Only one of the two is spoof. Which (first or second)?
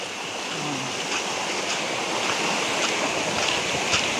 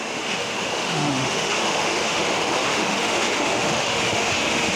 second